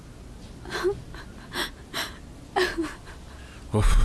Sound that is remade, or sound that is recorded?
recorded